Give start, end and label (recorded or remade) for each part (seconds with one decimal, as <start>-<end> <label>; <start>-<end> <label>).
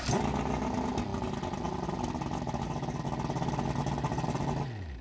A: 0.0-5.0 recorded